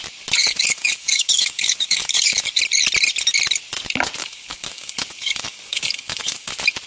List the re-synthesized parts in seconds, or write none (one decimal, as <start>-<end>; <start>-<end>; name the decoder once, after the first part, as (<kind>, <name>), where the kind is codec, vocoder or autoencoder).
0.4-2.6 (codec, DAC); 4.2-6.5